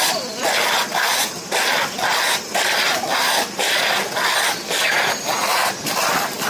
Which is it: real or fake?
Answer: real